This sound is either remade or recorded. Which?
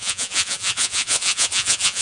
remade